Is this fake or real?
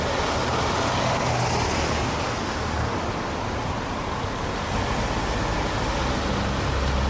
real